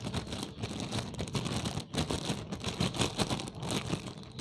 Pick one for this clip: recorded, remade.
recorded